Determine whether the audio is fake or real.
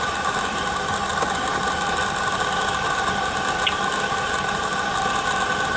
real